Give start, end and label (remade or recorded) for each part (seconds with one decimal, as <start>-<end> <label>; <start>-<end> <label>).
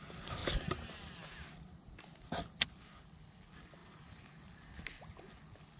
0.0-3.8 recorded; 3.8-4.6 remade; 4.6-5.8 recorded